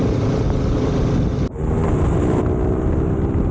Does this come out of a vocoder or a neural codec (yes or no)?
no